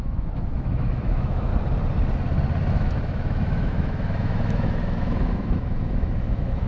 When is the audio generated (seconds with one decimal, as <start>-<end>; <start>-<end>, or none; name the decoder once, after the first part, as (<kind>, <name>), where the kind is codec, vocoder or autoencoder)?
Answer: 0.0-1.5 (autoencoder, DAC-VAE); 2.7-6.7